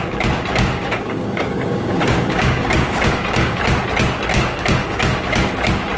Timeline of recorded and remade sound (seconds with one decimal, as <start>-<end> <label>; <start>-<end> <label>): 0.0-0.5 recorded; 0.5-3.6 remade; 3.6-4.3 recorded; 4.3-5.5 remade; 5.5-6.0 recorded